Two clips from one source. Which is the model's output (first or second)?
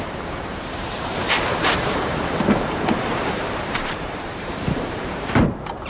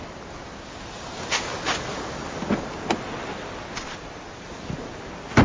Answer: first